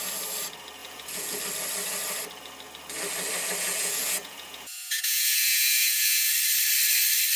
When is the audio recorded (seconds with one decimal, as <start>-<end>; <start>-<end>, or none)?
0.0-0.8; 1.4-3.6; 6.3-7.4